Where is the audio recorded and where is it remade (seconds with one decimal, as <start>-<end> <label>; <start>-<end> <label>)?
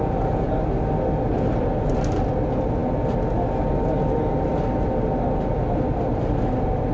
0.0-6.9 recorded